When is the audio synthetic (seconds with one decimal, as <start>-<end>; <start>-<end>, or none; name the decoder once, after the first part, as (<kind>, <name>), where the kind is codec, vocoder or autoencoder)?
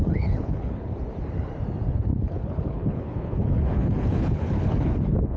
0.0-0.9 (codec, HILCodec); 2.1-5.4